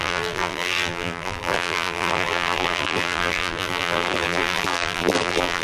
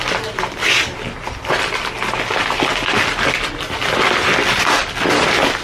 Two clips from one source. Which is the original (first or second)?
second